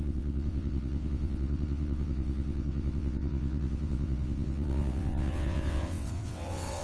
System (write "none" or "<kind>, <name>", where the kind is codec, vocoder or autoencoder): vocoder, WaveNeXt